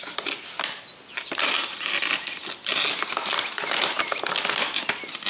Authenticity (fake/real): real